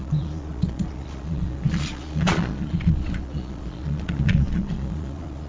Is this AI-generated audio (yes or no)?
yes